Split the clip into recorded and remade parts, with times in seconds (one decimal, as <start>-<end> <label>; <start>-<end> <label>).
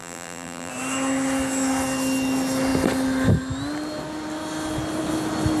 0.0-0.7 remade; 0.7-5.6 recorded